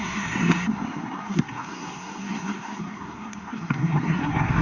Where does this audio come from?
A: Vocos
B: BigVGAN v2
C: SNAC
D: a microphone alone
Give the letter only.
C